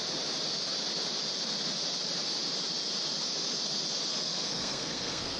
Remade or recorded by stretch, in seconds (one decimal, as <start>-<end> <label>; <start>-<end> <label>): 0.0-4.1 recorded; 4.1-5.4 remade